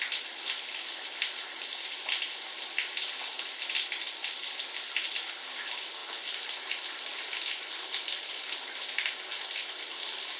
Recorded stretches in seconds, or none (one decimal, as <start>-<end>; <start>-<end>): 0.0-10.4

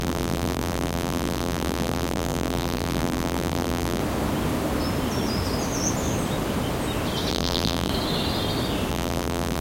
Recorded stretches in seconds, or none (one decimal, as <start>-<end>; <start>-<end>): 4.0-7.3; 7.9-8.9